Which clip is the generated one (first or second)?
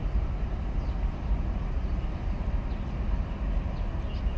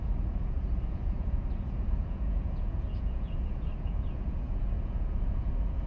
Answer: second